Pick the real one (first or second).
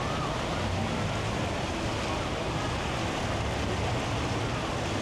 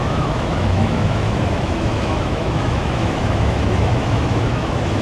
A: first